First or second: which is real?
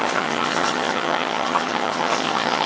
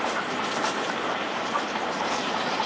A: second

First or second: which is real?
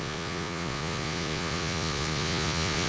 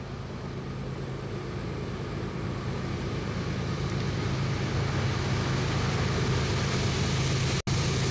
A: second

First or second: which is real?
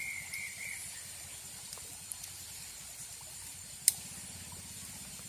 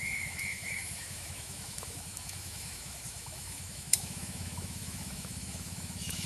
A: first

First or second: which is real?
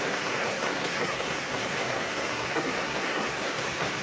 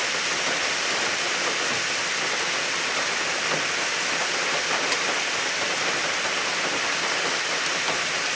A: second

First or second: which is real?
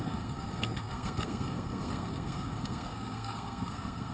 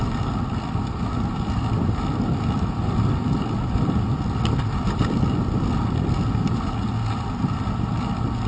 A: second